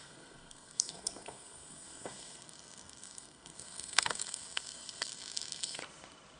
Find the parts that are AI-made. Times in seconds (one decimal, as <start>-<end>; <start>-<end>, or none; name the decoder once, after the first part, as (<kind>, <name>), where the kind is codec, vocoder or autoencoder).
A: 0.0-5.8 (codec, SNAC)